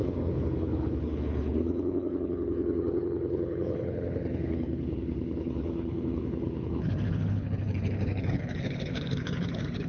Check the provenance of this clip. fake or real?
fake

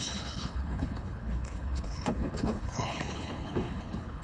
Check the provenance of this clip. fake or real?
fake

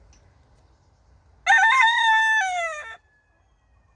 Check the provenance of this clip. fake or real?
real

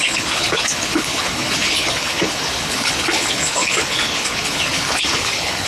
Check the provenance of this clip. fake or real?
fake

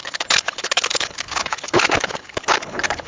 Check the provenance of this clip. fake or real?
fake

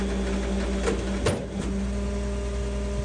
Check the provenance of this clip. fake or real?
real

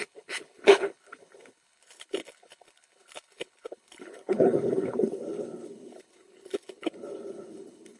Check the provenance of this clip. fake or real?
fake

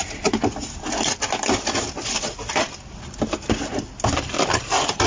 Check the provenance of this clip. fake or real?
real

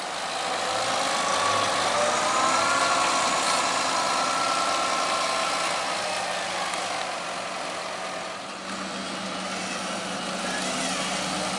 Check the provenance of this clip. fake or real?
real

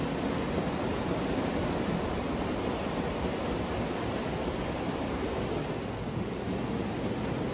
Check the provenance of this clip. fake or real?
real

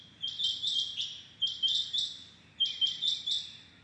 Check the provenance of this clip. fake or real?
real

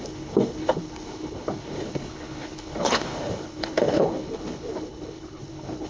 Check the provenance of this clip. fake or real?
fake